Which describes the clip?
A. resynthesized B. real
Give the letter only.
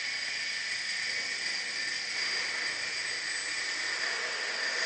B